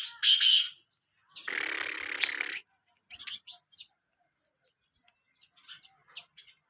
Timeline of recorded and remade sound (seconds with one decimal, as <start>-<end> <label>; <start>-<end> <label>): 0.0-6.7 recorded